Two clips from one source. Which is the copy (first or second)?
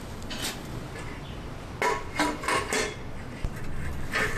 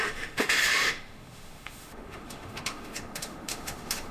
second